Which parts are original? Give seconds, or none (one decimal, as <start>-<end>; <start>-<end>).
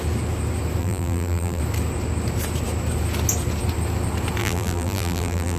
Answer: 0.0-0.8; 1.6-4.4